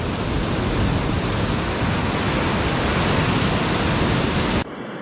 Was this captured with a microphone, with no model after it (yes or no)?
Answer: yes